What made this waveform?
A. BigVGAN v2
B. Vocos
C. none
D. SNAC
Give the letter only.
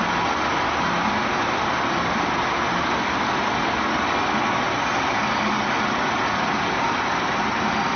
C